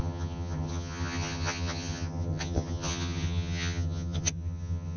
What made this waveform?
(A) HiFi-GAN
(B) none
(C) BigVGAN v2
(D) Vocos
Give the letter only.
A